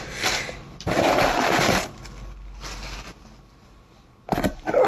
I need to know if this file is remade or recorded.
recorded